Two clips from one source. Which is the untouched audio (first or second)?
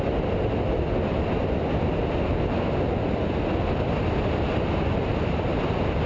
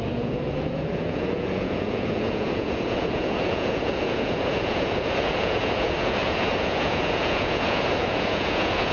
first